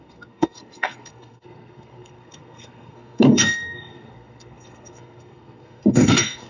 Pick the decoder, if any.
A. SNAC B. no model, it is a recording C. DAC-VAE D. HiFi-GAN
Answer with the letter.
A